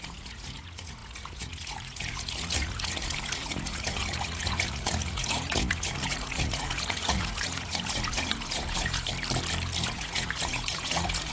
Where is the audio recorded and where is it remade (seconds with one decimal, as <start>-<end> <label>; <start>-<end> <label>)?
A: 0.0-9.1 remade; 9.1-9.9 recorded; 9.9-11.3 remade